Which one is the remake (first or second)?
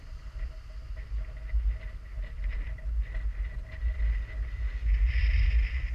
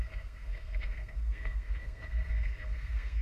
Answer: second